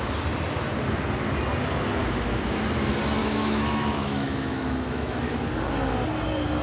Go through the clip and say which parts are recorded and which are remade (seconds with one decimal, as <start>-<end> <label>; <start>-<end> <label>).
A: 0.0-2.0 recorded; 2.0-2.6 remade; 2.6-3.2 recorded; 3.2-5.4 remade; 5.4-6.6 recorded